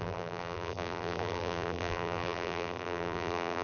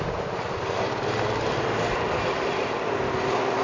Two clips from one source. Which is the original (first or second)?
second